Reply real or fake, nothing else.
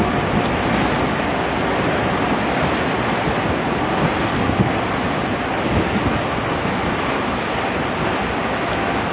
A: real